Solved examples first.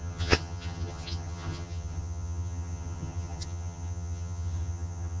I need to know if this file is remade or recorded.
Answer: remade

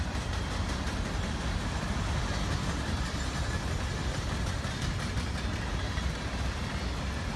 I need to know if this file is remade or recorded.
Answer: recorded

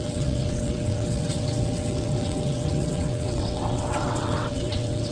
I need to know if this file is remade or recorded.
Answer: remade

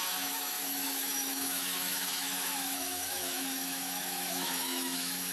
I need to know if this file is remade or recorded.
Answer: remade